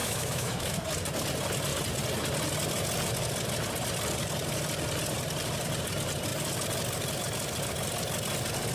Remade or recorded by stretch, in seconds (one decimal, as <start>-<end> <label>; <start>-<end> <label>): 0.0-0.8 remade; 0.8-8.7 recorded